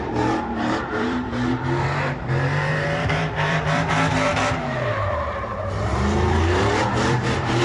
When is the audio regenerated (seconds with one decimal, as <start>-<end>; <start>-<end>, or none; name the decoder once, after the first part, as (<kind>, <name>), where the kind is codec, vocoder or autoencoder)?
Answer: 0.0-7.6 (vocoder, BigVGAN v2)